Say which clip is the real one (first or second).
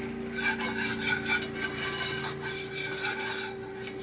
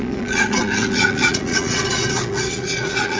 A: first